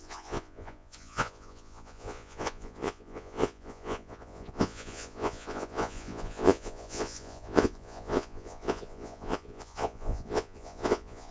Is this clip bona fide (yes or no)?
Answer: no